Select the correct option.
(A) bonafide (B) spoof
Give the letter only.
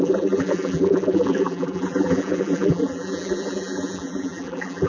B